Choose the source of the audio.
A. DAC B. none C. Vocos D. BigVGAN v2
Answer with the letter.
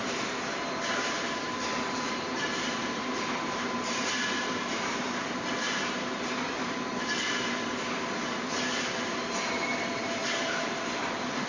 D